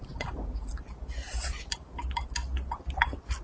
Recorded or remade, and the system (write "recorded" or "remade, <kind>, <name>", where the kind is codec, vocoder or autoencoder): recorded